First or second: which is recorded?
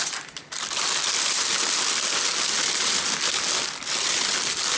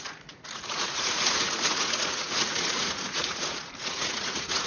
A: first